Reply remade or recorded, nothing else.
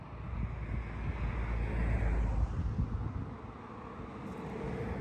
recorded